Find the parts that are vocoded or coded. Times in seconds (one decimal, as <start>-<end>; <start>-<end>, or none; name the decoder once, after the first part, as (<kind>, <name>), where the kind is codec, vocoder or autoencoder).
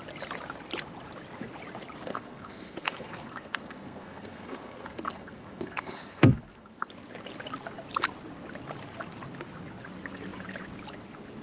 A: 2.1-6.9 (codec, SNAC)